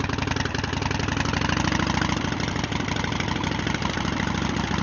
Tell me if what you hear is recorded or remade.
recorded